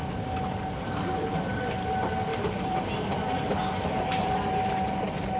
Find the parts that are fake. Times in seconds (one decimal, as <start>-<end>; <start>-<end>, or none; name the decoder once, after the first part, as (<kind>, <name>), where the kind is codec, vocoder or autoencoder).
2.3-4.3 (vocoder, BigVGAN v2)